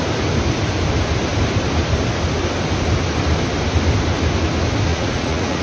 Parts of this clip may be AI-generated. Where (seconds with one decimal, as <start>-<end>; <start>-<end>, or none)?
4.9-5.6